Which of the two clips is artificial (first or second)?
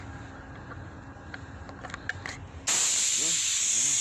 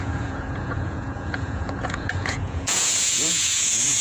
second